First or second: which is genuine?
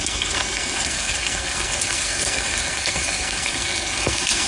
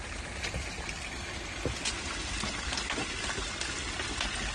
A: second